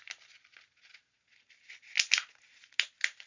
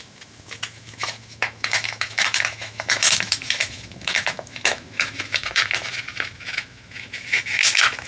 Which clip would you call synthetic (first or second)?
second